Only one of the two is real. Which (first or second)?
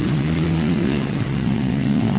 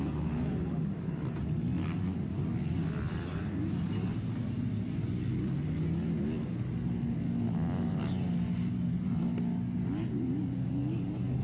second